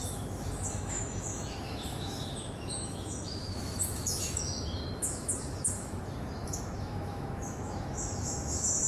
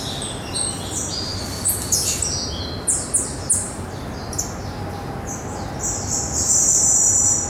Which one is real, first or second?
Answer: second